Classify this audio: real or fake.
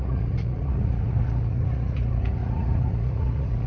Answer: fake